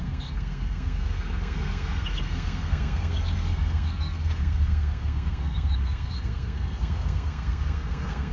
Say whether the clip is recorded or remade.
remade